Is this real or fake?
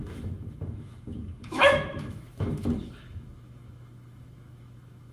fake